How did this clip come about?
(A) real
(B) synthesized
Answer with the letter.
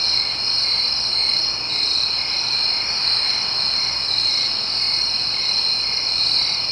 A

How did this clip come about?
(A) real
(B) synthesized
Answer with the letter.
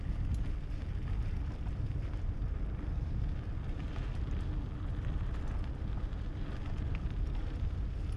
A